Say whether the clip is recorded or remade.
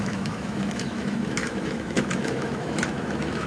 remade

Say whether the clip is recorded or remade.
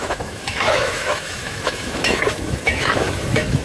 remade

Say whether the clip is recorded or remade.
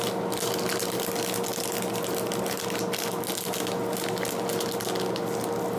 recorded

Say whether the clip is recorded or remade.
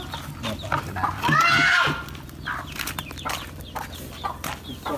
recorded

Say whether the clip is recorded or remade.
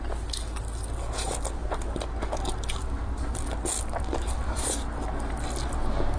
recorded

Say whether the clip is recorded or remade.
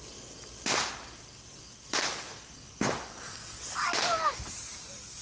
recorded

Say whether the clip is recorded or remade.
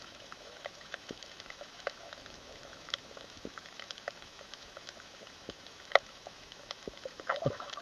remade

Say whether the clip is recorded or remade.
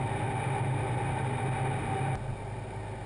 recorded